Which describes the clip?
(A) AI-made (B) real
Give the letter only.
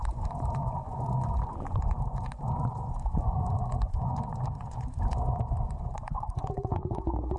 A